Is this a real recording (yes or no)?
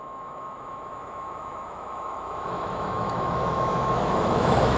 no